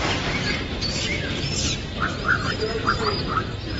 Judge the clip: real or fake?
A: real